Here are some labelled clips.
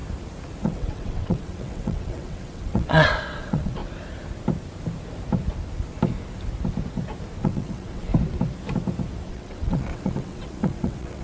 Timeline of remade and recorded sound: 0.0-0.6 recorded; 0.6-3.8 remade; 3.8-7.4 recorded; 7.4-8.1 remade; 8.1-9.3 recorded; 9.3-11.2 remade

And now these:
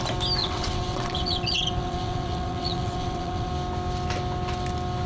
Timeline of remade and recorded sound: 0.0-0.4 recorded; 0.4-3.5 remade; 3.5-5.1 recorded

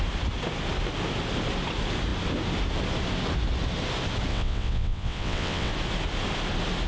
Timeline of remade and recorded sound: 0.0-4.3 recorded; 4.3-5.7 remade; 5.7-6.9 recorded

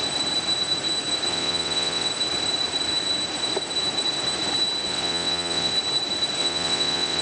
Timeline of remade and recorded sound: 0.0-1.3 recorded; 1.3-2.1 remade; 2.1-4.9 recorded; 4.9-5.7 remade; 5.7-6.4 recorded; 6.4-7.2 remade

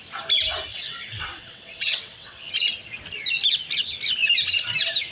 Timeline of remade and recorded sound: 0.0-0.7 recorded; 0.7-2.5 remade; 2.5-5.1 recorded